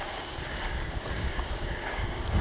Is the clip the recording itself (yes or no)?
no